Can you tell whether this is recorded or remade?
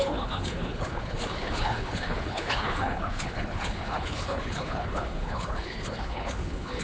remade